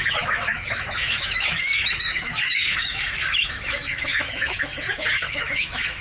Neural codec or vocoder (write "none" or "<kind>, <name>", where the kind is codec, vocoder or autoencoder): autoencoder, DAC-VAE